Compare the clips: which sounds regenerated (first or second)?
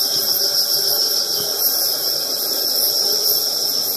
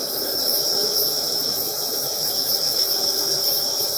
second